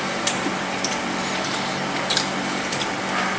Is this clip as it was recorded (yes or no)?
yes